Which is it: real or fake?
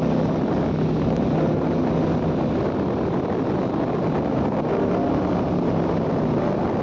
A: real